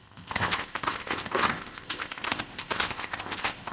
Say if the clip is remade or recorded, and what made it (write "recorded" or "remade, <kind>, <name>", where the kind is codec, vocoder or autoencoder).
remade, codec, ZipCodec